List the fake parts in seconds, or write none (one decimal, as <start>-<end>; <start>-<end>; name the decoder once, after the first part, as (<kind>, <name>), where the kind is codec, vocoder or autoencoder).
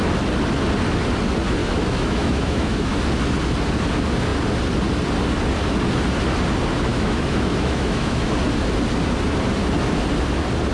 1.6-2.9 (autoencoder, DAC-VAE); 6.9-8.3